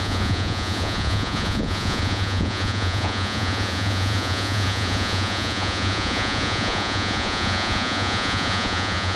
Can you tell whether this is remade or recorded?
remade